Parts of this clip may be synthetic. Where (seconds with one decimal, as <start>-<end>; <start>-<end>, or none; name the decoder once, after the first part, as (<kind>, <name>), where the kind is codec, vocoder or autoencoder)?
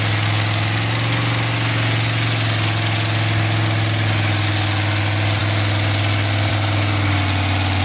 none